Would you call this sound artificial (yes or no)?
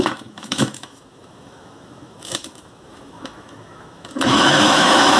yes